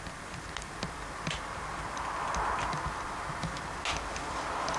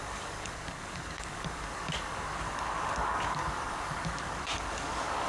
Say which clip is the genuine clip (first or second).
first